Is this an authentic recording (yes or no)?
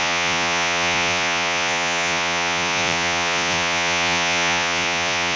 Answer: no